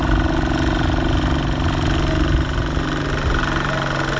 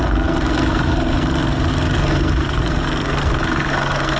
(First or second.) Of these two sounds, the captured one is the first